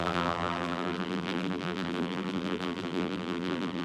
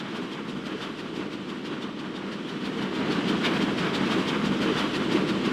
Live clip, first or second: second